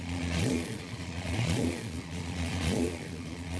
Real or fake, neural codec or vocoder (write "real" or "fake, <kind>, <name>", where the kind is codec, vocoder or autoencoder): fake, vocoder, Vocos